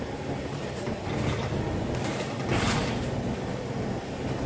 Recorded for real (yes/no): yes